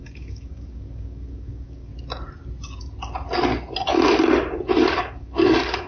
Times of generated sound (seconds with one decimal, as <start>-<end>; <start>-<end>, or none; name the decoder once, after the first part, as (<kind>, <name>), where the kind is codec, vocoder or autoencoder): 0.0-1.9 (codec, DAC); 4.8-5.9